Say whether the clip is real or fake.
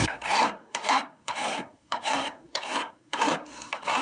fake